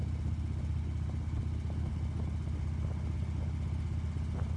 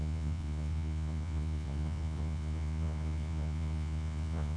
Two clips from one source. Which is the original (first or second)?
first